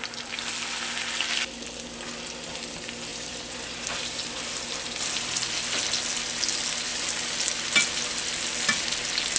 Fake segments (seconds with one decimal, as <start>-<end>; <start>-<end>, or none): 3.1-5.5